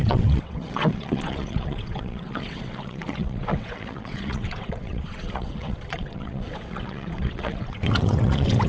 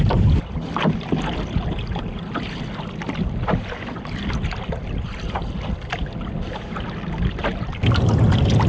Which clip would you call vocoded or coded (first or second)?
first